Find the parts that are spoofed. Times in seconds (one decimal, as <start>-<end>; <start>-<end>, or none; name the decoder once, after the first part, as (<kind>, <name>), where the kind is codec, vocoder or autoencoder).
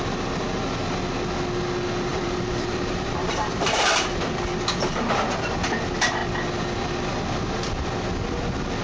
2.1-4.3 (vocoder, BigVGAN v2)